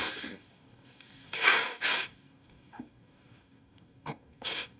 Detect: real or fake fake